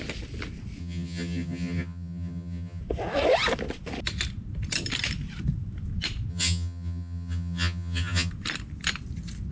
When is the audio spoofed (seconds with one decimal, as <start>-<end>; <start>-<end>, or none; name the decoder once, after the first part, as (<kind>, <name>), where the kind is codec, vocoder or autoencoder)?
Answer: 0.8-2.8 (vocoder, HiFi-GAN); 6.3-8.3